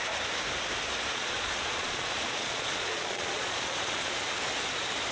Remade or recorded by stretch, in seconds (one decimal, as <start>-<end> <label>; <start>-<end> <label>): 0.0-1.1 recorded; 1.1-4.2 remade; 4.2-5.1 recorded